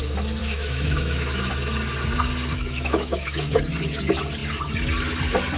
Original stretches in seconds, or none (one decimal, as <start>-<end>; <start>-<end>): 0.0-0.4; 1.5-2.5; 3.6-5.6